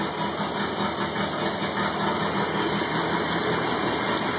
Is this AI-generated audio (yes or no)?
no